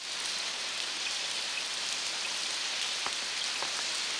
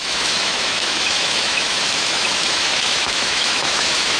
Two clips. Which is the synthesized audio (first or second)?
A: second